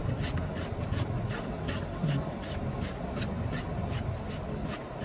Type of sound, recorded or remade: recorded